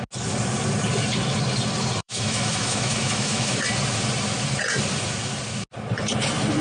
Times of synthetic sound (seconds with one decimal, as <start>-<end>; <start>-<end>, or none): 2.0-3.6